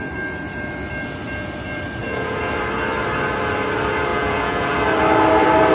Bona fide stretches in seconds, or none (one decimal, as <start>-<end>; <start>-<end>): 0.0-2.0; 2.5-4.1; 4.7-5.7